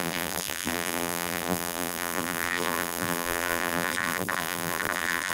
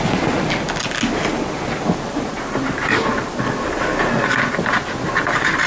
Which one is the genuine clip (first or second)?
second